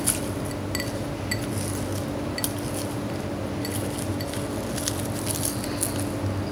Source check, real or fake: real